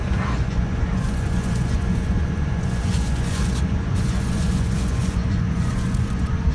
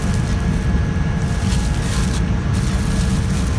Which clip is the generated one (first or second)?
first